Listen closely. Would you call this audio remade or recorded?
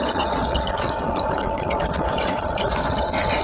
remade